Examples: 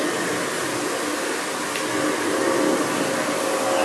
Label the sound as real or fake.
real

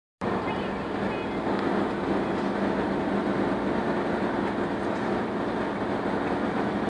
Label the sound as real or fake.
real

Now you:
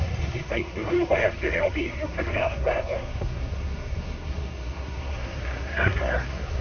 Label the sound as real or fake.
fake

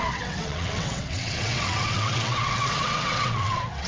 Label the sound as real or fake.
fake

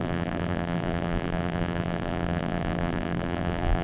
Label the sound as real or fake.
fake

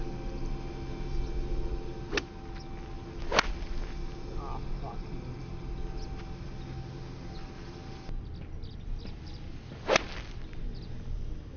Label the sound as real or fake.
real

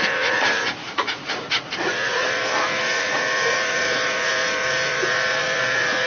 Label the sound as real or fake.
fake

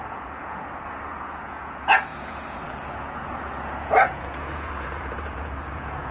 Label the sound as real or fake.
fake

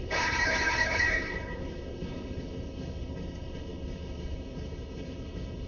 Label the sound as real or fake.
fake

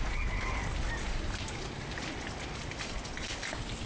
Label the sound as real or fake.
real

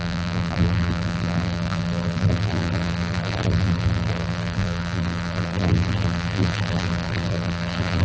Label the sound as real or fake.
fake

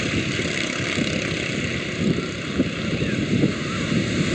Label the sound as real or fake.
real